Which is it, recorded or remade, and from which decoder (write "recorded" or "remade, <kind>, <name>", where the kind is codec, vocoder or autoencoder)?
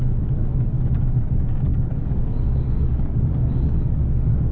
remade, codec, DAC